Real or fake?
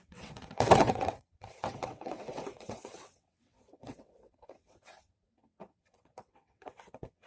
fake